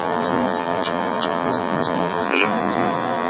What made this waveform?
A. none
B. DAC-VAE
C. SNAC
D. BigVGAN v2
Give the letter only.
D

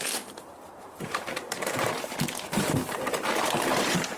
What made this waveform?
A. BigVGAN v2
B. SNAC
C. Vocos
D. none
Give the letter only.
A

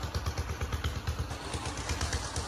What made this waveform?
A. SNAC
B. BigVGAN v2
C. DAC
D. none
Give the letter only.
D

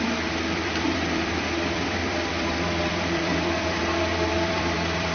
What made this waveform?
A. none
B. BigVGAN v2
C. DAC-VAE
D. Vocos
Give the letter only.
B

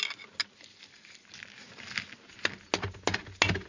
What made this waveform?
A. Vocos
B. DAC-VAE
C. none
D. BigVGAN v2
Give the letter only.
C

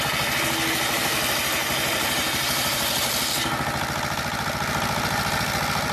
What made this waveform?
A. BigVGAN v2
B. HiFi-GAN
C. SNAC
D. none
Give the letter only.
D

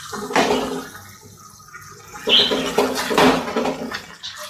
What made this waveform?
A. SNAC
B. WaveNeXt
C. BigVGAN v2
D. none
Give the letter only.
D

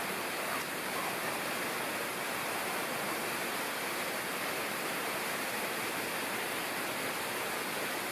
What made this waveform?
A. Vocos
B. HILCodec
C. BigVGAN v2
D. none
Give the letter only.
D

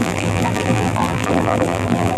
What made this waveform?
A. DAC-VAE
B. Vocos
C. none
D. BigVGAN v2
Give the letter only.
D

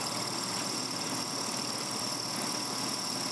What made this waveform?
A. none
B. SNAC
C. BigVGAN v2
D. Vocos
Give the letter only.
C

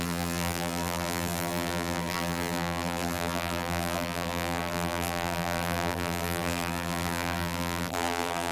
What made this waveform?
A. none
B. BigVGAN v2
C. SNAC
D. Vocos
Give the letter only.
B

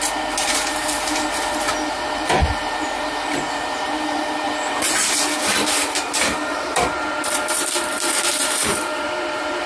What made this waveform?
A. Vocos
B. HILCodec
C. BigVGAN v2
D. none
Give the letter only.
C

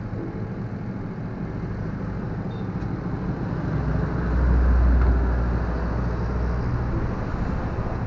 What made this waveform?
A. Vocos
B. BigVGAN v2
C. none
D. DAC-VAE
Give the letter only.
C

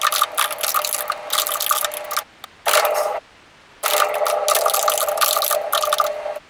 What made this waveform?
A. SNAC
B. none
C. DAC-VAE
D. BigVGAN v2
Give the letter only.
B